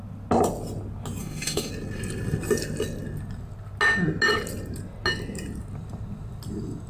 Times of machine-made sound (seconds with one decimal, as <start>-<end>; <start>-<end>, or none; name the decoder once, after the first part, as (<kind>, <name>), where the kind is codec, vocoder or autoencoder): 1.2-1.7 (autoencoder, DAC-VAE)